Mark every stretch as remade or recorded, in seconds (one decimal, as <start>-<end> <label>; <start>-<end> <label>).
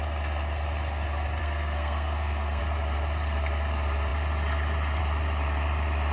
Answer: 0.0-1.4 recorded; 1.4-2.6 remade; 2.6-6.1 recorded